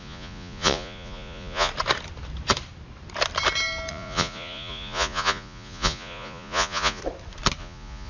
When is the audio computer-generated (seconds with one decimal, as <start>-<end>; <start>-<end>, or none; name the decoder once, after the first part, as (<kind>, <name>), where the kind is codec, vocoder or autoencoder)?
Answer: 0.0-1.7 (vocoder, Vocos); 3.9-7.0; 7.6-8.1